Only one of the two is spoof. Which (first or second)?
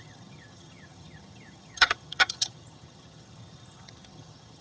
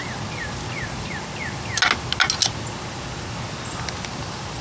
first